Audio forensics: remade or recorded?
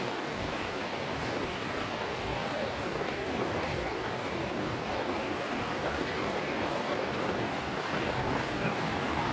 remade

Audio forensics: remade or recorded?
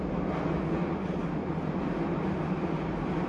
recorded